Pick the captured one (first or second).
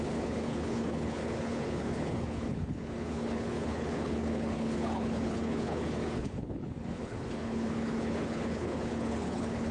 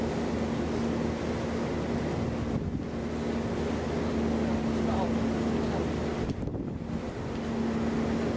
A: second